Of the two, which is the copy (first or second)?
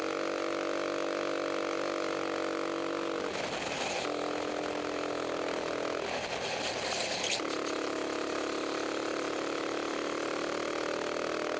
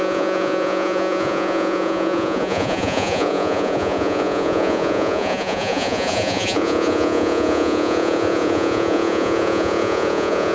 second